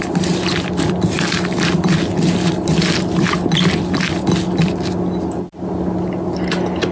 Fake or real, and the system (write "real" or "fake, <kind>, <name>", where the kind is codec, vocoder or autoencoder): real